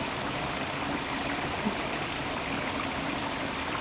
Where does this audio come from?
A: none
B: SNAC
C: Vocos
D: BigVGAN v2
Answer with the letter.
A